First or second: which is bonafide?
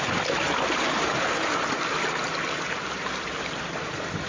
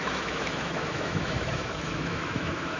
first